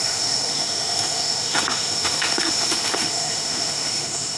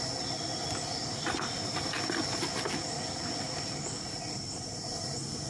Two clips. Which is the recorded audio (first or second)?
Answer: second